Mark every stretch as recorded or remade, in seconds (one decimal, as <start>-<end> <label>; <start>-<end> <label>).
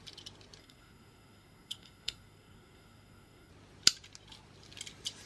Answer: 0.0-0.6 recorded; 0.6-3.5 remade; 3.5-5.3 recorded